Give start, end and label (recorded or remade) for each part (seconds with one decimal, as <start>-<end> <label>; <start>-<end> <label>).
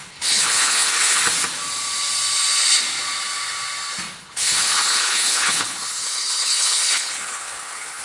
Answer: 0.0-1.2 remade; 1.2-4.2 recorded; 4.2-8.0 remade